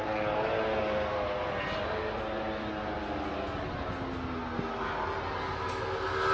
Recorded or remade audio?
recorded